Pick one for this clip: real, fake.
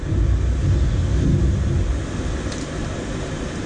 real